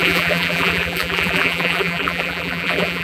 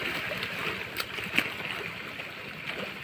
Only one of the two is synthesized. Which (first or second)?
first